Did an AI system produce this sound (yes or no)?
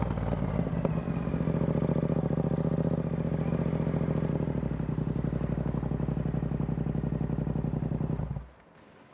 no